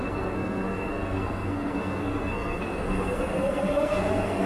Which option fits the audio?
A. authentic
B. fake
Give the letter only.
B